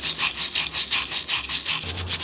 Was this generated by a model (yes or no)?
no